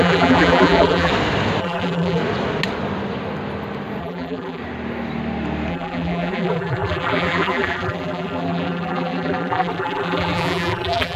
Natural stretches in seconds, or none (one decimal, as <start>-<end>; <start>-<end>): 1.1-1.6; 2.2-4.0; 4.6-5.7